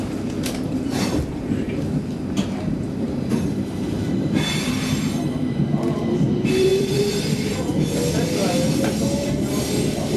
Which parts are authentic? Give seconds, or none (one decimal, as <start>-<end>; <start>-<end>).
none